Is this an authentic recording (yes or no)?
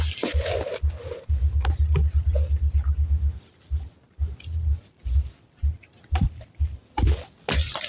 yes